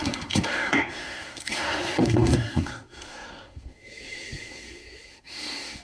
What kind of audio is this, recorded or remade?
remade